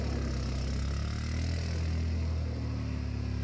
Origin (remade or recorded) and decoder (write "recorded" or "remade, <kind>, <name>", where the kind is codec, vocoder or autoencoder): recorded